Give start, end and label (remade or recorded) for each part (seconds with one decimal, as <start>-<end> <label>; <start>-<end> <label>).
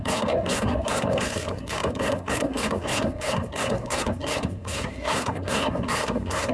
0.0-6.5 remade